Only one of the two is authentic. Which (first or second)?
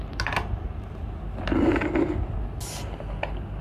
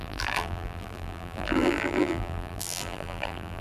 first